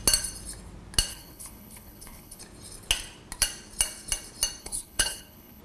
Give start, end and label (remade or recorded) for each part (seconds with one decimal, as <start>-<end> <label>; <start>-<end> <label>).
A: 0.0-1.1 recorded; 1.1-2.4 remade; 2.4-4.6 recorded; 4.6-5.6 remade

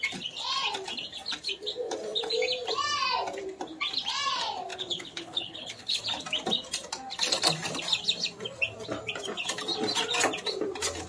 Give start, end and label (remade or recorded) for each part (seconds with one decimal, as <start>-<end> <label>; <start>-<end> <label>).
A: 0.0-4.7 recorded; 4.7-6.0 remade; 6.0-11.1 recorded

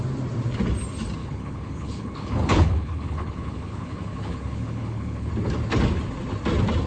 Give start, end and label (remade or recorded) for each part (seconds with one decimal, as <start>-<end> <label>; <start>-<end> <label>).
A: 0.0-1.2 recorded; 1.2-5.3 remade; 5.3-6.9 recorded

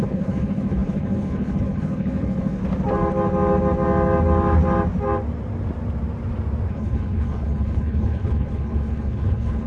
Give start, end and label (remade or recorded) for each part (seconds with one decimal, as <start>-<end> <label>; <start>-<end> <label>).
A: 0.0-2.6 remade; 2.6-6.7 recorded; 6.7-9.7 remade

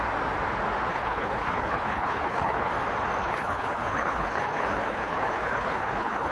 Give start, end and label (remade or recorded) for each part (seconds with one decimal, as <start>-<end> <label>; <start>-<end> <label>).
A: 0.0-0.9 recorded; 0.9-2.7 remade; 2.7-3.2 recorded; 3.2-6.3 remade